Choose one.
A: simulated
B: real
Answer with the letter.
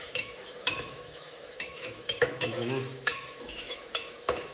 A